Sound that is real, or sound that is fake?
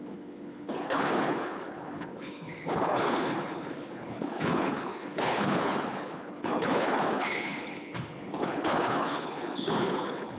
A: fake